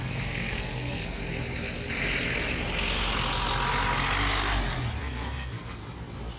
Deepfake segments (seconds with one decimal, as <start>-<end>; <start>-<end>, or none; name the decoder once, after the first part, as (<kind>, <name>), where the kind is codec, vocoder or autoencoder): 0.0-1.2 (codec, SNAC); 5.0-5.8